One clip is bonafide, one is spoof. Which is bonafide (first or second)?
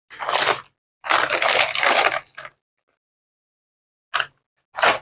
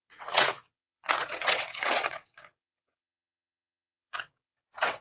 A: first